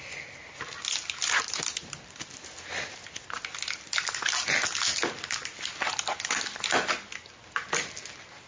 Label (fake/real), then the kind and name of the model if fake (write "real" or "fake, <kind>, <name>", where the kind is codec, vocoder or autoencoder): real